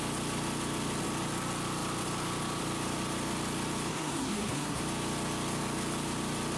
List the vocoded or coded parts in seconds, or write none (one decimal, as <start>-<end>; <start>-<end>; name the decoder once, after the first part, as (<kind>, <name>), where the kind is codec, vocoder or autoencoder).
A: 3.9-4.8 (codec, SNAC)